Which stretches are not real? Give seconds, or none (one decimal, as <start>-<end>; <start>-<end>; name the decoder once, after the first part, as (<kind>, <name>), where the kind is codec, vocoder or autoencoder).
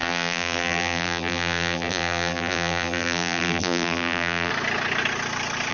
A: 0.0-4.5 (vocoder, BigVGAN v2)